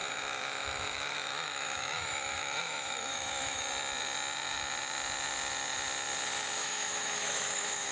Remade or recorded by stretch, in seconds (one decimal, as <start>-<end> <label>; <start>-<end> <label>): 0.0-3.6 remade; 3.6-6.6 recorded; 6.6-7.9 remade

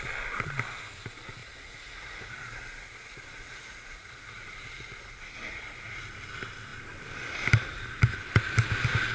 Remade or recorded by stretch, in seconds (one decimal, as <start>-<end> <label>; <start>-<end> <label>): 0.0-1.4 recorded; 1.4-6.0 remade; 6.0-9.1 recorded

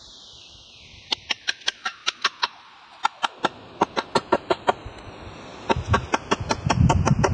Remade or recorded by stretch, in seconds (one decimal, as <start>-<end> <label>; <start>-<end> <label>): 0.0-7.3 recorded

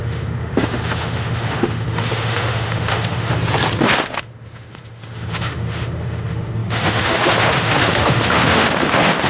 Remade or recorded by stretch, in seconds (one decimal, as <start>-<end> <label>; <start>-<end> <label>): 0.0-3.3 remade; 3.3-3.8 recorded; 3.8-9.3 remade

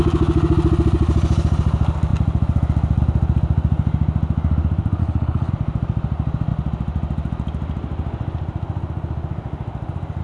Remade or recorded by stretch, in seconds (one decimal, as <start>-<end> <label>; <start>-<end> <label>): 0.0-5.0 recorded; 5.0-5.5 remade; 5.5-10.2 recorded